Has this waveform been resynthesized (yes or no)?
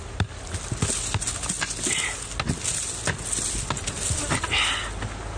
no